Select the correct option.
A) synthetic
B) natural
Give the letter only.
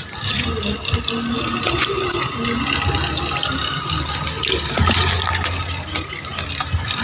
B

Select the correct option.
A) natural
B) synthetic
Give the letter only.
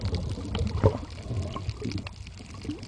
A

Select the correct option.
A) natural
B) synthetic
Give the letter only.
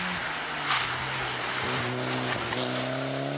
A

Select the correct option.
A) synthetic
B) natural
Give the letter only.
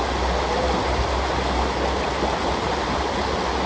B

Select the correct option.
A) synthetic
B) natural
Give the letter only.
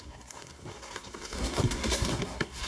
A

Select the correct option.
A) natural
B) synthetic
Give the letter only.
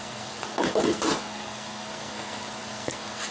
B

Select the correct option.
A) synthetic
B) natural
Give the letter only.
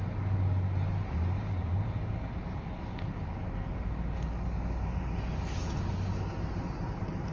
B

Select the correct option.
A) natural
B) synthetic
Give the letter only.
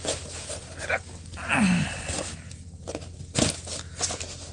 A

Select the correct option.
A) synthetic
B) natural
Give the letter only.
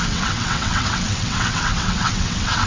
A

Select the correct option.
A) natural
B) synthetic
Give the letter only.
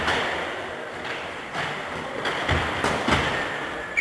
A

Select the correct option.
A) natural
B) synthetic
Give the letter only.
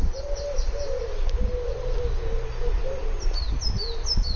A